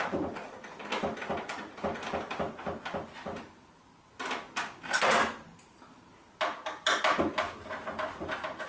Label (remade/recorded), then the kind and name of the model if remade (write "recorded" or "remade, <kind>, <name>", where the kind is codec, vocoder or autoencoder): recorded